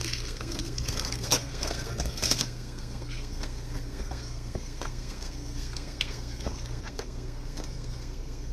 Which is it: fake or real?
fake